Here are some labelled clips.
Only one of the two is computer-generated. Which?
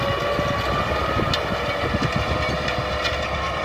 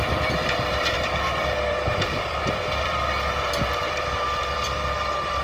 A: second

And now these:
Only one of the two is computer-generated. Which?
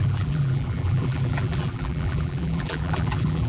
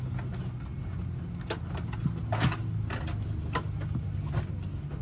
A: first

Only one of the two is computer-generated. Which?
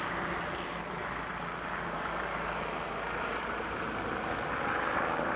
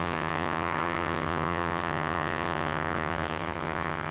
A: second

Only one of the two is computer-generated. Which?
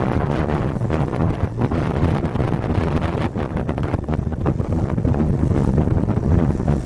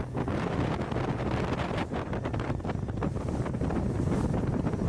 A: first